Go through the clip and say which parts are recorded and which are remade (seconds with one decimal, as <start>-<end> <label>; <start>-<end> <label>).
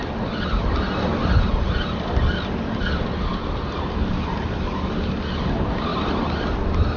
0.0-7.0 recorded